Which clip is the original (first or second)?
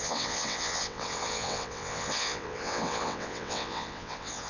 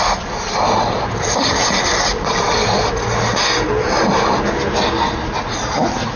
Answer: second